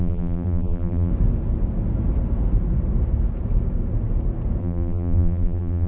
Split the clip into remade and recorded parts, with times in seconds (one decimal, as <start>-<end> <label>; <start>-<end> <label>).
0.0-1.1 remade; 1.1-4.6 recorded; 4.6-5.9 remade